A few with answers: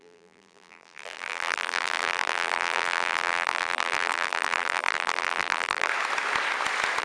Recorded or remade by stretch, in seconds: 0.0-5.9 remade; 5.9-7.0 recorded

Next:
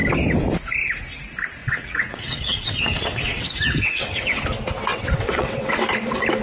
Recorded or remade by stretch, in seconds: 0.0-1.6 recorded; 1.6-4.4 remade; 4.4-4.9 recorded; 4.9-5.7 remade; 5.7-6.4 recorded

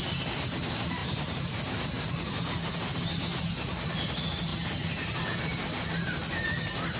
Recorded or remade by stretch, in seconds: 0.0-1.0 recorded; 1.0-2.1 remade; 2.1-7.0 recorded

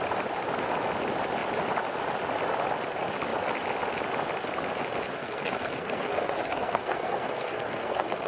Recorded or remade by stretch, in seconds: 0.0-5.2 recorded; 5.2-8.3 remade

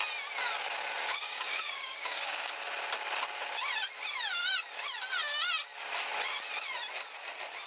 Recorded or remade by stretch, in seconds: 0.0-1.0 recorded; 1.0-2.5 remade; 2.5-7.7 recorded

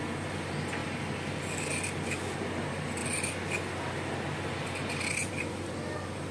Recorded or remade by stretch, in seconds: 0.0-6.3 recorded